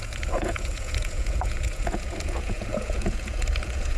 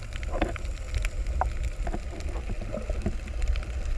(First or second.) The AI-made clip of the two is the first